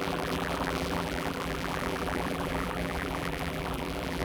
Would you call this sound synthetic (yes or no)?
yes